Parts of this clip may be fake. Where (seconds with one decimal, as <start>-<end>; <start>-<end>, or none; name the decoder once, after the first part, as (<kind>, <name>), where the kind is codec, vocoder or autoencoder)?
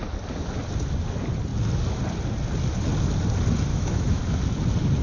3.7-4.2 (autoencoder, DAC-VAE)